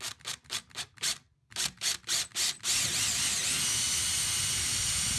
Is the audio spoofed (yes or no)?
no